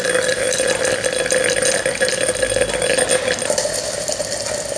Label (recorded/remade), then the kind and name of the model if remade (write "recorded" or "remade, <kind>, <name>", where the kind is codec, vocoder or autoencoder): recorded